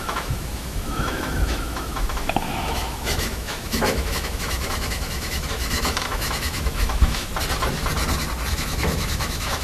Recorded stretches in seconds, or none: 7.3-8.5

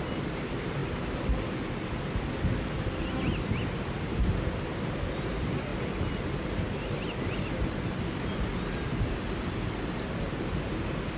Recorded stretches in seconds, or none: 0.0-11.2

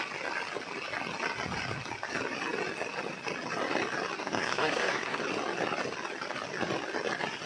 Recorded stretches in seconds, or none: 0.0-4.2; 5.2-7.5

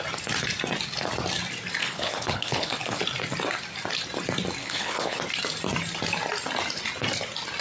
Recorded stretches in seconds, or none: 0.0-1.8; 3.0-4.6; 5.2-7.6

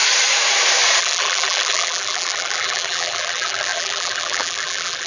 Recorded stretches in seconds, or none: 0.0-1.0

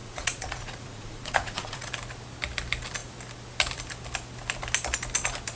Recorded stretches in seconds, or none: 1.9-5.6

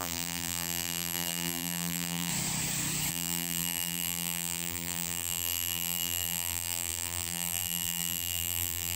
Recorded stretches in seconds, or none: 2.3-3.1

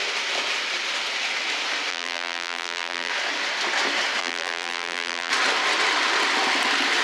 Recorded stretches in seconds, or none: 0.0-1.9; 3.1-4.2; 5.3-7.0